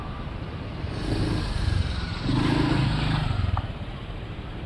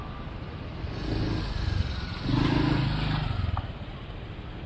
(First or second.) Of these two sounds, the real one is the second